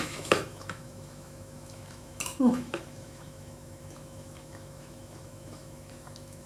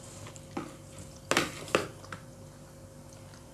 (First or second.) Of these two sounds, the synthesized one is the first